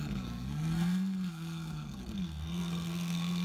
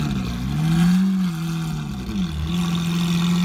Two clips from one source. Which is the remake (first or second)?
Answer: first